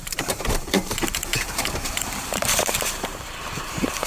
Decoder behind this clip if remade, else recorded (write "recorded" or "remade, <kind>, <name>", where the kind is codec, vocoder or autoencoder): remade, vocoder, BigVGAN v2